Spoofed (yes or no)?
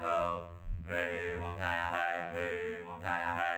yes